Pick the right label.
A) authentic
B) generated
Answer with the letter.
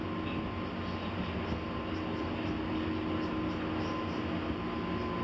A